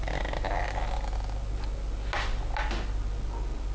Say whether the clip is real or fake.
real